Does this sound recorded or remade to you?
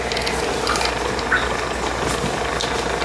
recorded